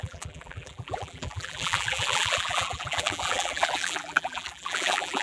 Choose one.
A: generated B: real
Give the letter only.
A